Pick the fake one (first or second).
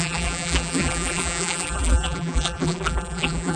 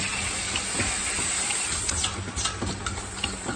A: first